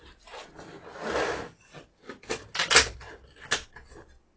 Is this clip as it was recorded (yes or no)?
yes